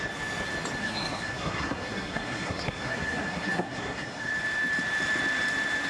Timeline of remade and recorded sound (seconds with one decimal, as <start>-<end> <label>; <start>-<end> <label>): 0.0-0.8 recorded; 0.8-4.3 remade; 4.3-5.9 recorded